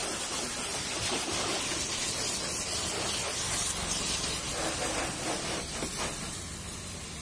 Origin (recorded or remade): recorded